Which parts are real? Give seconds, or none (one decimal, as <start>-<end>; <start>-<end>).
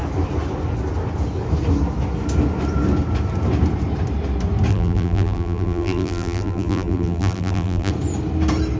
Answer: 0.0-4.7; 7.9-8.8